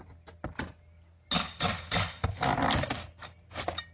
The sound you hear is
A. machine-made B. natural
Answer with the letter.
B